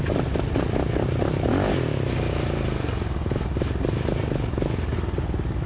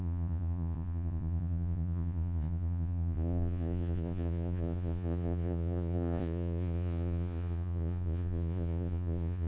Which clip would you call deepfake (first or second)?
second